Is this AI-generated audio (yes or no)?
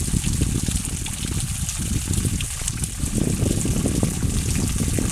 no